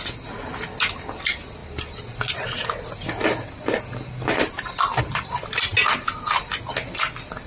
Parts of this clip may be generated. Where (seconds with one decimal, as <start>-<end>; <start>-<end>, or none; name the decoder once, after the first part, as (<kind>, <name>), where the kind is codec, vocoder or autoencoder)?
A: none